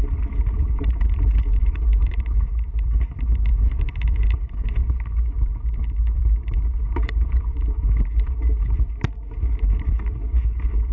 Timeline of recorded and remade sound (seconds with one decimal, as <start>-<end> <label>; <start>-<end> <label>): 0.0-10.9 remade